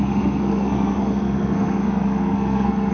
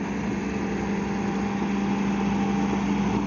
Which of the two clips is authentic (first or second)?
second